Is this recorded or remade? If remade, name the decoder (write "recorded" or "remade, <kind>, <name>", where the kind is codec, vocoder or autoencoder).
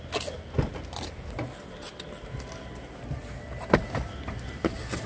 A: recorded